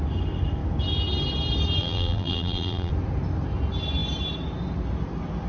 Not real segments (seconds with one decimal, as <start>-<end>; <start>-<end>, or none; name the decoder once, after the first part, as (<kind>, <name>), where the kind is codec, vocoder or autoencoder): 1.8-2.9 (vocoder, BigVGAN v2)

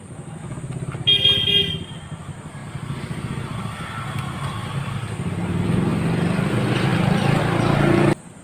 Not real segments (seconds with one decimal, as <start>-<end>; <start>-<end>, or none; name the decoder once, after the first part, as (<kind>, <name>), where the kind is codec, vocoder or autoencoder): none

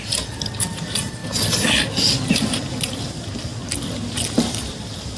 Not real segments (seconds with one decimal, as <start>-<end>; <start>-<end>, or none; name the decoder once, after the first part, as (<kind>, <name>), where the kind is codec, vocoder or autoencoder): 0.0-1.2 (vocoder, BigVGAN v2); 2.3-3.5; 4.7-5.2

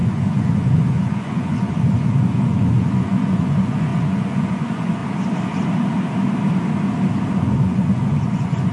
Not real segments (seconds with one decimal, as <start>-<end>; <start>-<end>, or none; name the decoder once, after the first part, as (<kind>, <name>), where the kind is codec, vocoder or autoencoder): 0.0-5.0 (vocoder, Vocos); 7.3-8.7

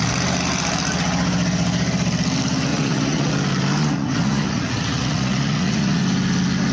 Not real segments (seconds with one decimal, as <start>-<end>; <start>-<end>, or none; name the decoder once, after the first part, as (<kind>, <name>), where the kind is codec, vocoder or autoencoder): 2.7-3.3 (vocoder, Vocos); 3.8-6.0

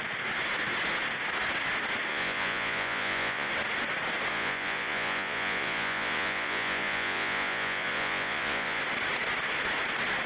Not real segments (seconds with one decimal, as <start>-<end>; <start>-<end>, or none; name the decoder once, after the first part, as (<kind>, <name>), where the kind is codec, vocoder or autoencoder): 2.1-3.5 (vocoder, Vocos); 4.3-8.8

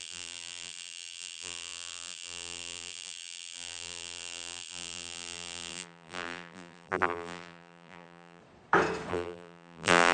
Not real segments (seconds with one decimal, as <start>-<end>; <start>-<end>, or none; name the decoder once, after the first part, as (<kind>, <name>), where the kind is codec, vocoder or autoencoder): 0.0-8.4 (vocoder, BigVGAN v2); 9.1-10.1

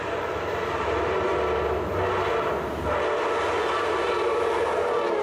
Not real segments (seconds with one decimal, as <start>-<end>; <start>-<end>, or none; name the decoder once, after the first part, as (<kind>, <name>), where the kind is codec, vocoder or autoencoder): 0.0-1.3 (vocoder, BigVGAN v2); 3.8-5.2